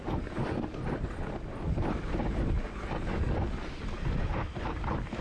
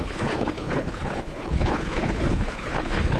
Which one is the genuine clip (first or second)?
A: first